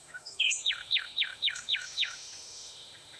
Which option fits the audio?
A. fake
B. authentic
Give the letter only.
A